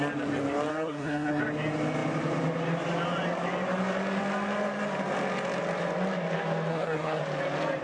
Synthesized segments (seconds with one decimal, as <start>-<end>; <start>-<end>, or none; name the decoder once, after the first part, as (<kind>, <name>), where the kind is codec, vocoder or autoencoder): 0.7-1.4 (codec, SNAC); 6.7-7.2